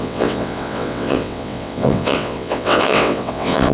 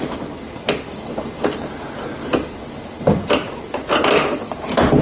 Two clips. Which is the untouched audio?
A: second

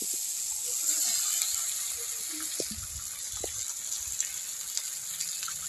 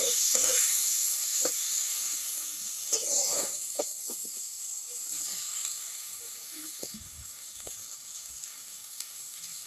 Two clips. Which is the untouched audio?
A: first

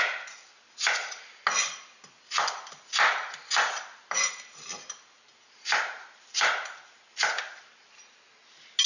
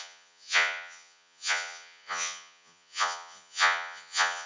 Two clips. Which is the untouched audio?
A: first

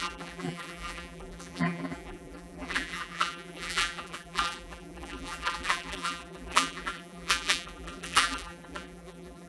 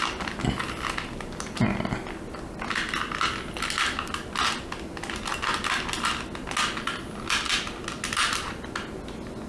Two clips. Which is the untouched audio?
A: second